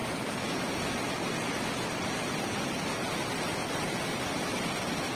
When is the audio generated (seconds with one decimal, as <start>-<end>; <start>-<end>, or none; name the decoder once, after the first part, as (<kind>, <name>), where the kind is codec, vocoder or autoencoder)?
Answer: none